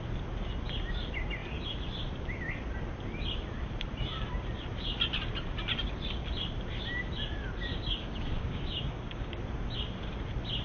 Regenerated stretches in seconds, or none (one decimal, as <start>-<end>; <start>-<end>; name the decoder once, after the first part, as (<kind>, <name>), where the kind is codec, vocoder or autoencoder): 7.7-9.4 (codec, DAC)